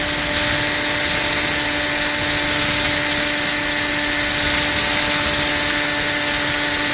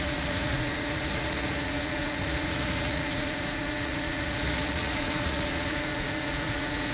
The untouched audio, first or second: first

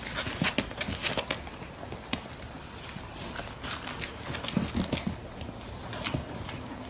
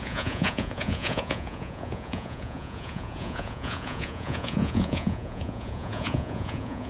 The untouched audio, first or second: first